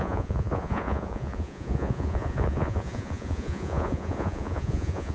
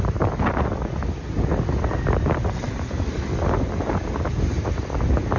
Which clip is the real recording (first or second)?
second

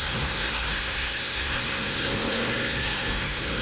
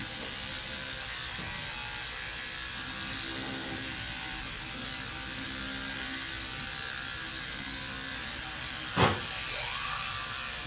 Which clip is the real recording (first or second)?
second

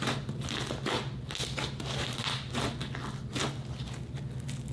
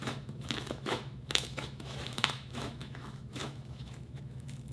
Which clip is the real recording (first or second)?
first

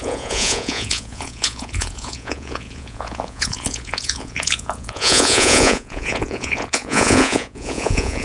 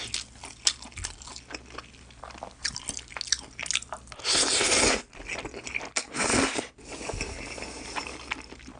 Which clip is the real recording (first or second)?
second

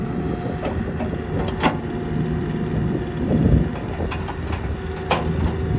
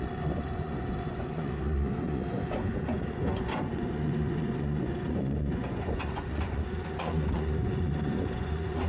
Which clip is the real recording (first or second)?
first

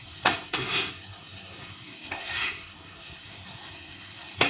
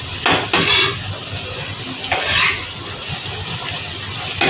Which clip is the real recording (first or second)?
second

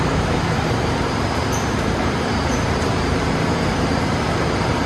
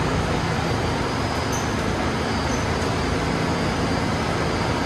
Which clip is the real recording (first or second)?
second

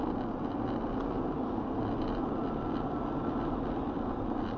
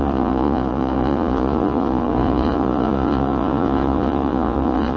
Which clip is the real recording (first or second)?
first